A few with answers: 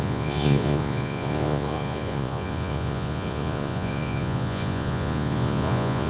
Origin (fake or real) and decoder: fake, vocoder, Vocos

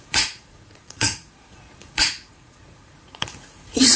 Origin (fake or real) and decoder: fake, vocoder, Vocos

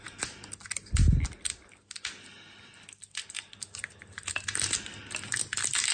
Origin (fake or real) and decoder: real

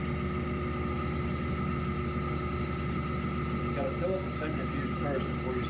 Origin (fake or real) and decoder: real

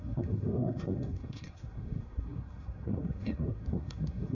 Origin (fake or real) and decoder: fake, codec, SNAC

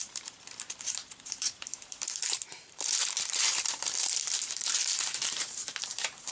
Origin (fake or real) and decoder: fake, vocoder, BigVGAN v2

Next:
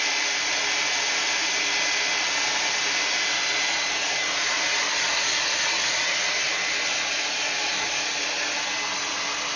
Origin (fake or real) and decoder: real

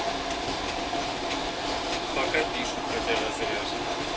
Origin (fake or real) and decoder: real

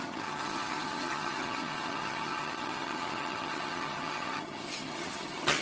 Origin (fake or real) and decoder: fake, vocoder, HiFi-GAN